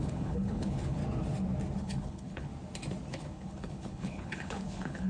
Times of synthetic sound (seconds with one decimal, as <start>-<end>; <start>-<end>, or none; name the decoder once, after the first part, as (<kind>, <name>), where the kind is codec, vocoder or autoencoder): 0.0-1.0 (codec, HILCodec); 1.8-2.5; 3.1-5.1